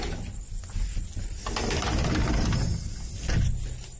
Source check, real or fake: real